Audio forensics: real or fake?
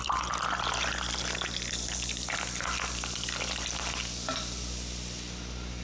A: real